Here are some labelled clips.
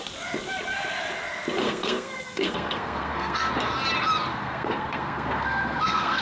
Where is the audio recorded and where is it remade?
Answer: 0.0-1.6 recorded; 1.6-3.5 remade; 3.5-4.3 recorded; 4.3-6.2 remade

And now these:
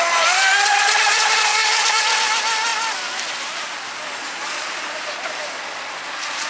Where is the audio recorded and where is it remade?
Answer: 0.0-1.5 recorded; 1.5-2.0 remade; 2.0-6.5 recorded

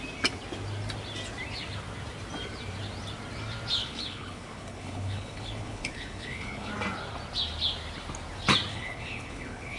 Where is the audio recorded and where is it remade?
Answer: 0.0-3.8 recorded; 3.8-6.7 remade; 6.7-8.7 recorded; 8.7-9.8 remade

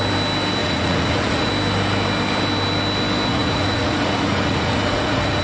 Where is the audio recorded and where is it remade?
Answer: 0.0-0.6 recorded; 0.6-1.5 remade; 1.5-3.3 recorded; 3.3-5.4 remade

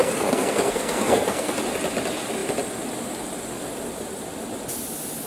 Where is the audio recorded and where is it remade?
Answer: 0.0-1.6 remade; 1.6-5.3 recorded

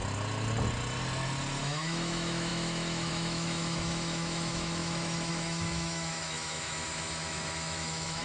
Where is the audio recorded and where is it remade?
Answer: 0.0-1.6 recorded; 1.6-8.2 remade

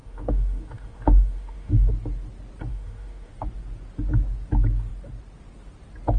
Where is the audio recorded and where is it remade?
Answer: 0.0-1.9 remade; 1.9-2.7 recorded; 2.7-3.3 remade; 3.3-6.2 recorded

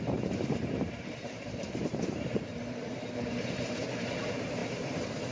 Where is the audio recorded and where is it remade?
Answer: 0.0-2.5 remade; 2.5-3.5 recorded; 3.5-5.3 remade